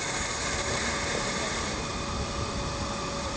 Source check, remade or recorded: recorded